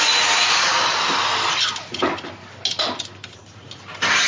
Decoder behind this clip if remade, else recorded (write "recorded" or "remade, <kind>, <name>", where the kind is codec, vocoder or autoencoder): recorded